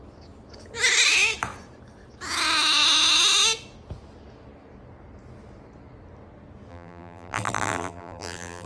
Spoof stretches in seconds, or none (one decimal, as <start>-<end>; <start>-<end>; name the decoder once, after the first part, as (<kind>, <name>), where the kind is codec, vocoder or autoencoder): 6.7-8.7 (vocoder, BigVGAN v2)